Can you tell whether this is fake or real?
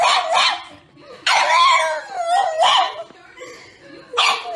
real